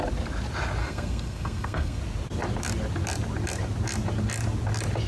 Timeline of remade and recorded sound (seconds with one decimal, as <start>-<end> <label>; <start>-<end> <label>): 0.0-0.8 recorded; 0.8-2.0 remade; 2.0-5.1 recorded